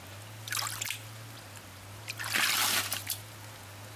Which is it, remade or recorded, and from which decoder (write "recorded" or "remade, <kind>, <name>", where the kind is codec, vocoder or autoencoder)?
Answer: recorded